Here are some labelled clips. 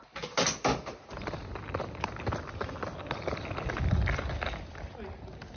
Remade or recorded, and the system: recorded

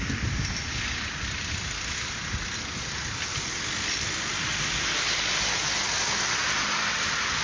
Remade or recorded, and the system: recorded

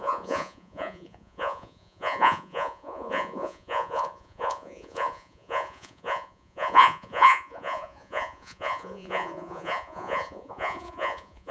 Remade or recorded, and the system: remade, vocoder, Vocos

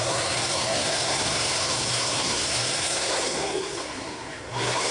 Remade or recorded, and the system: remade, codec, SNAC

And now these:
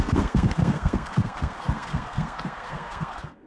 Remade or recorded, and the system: remade, codec, SNAC